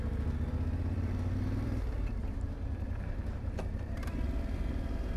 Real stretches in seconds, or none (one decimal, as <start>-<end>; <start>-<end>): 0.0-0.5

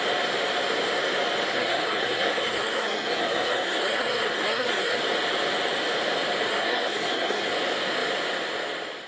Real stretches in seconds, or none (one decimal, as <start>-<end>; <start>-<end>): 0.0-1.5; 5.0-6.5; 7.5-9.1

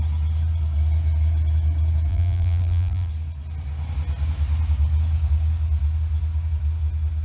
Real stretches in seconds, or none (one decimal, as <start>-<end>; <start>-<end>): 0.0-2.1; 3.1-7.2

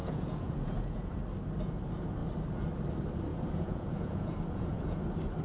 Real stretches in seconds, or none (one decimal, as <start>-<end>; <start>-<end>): 1.1-3.3; 5.0-5.4

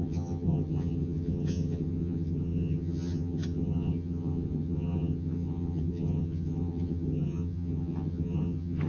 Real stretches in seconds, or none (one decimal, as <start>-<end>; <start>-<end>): none

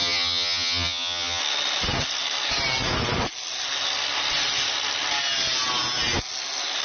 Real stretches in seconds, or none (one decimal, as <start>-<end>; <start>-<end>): 1.4-6.8

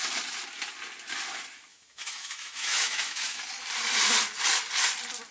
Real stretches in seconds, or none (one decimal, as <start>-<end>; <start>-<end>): 0.0-1.7; 3.4-5.3